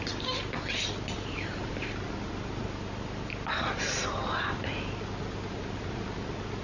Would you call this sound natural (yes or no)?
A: yes